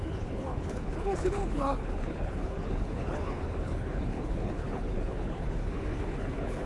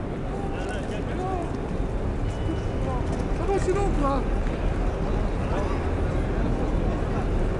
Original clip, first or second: second